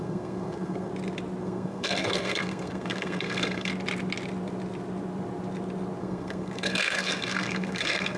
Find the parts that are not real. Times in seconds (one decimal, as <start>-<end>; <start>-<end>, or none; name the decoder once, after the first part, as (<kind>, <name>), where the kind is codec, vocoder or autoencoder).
0.0-0.9 (codec, SNAC); 1.4-3.7; 6.0-8.2